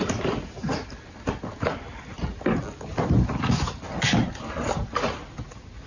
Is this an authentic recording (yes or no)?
yes